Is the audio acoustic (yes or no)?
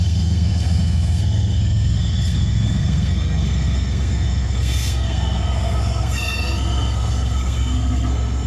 no